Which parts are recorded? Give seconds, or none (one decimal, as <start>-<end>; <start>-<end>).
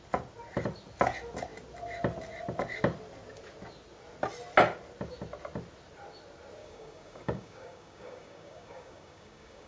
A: 0.0-6.6